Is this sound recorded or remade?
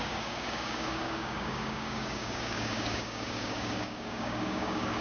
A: remade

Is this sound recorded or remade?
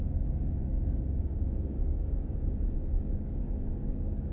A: remade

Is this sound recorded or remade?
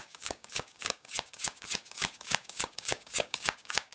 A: remade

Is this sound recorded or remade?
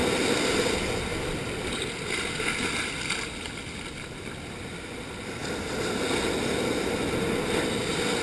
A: recorded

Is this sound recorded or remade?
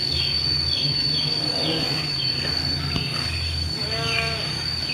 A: remade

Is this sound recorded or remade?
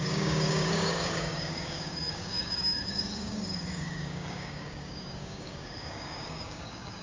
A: remade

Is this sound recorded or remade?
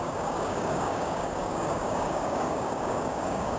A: remade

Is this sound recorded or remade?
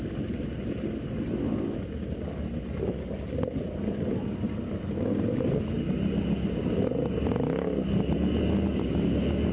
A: recorded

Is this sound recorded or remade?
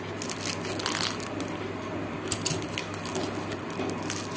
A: recorded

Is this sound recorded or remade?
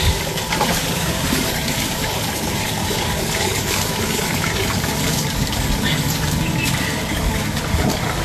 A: remade